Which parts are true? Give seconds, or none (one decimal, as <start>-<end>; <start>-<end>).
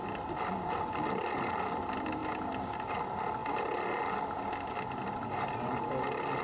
0.0-6.4